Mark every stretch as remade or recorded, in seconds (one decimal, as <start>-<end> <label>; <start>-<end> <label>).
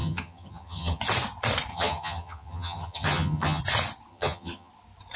0.0-1.0 remade; 1.0-1.7 recorded; 1.7-3.6 remade; 3.6-4.1 recorded; 4.1-4.7 remade; 4.7-5.2 recorded